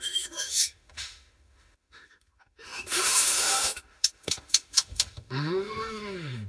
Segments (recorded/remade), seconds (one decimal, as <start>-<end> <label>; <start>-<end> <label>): 0.0-6.5 remade